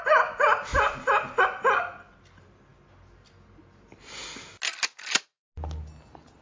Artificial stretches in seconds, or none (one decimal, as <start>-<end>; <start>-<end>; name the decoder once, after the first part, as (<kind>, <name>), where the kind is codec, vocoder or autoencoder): none